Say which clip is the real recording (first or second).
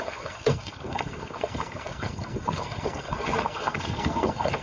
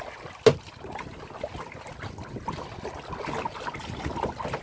second